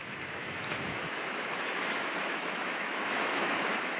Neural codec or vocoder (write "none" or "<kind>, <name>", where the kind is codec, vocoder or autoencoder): autoencoder, DAC-VAE